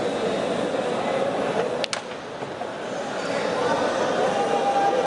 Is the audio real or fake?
real